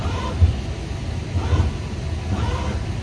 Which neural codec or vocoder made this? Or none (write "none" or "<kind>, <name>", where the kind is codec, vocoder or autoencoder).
none